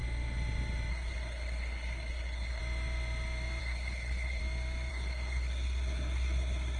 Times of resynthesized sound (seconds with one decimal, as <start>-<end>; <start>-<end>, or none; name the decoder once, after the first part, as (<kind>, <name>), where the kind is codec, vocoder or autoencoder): 0.9-2.6 (codec, SNAC); 3.6-4.4; 4.9-6.8